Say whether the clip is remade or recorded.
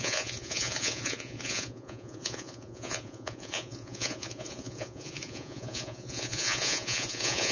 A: remade